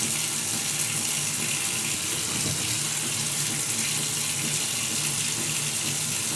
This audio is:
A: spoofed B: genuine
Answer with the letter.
B